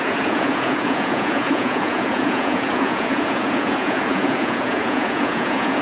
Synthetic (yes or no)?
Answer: yes